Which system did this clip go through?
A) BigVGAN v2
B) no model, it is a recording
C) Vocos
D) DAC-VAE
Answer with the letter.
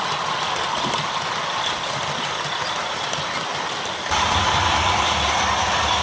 A